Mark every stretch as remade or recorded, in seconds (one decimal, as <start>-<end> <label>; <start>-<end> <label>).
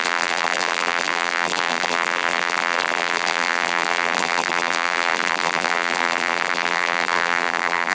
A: 0.0-7.9 remade